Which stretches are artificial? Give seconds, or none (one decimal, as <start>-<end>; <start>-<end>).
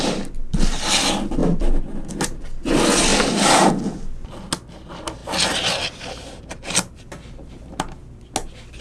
3.1-3.7